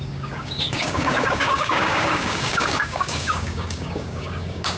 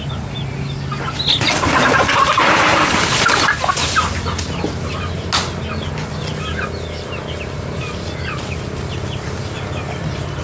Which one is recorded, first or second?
second